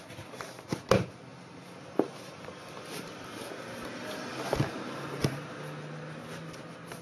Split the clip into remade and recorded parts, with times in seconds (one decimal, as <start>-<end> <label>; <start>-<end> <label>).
0.0-7.0 recorded